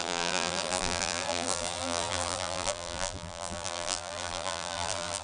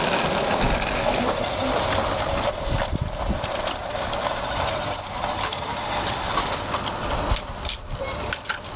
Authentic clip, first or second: second